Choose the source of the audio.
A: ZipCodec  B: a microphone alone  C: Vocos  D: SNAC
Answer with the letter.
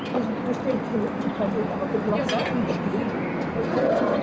B